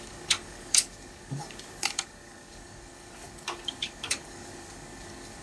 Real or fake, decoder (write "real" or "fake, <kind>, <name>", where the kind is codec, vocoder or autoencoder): fake, codec, DAC